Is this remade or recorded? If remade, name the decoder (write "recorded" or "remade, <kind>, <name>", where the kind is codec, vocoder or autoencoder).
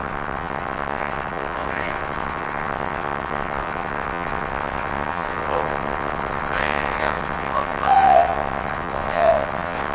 remade, vocoder, WaveNeXt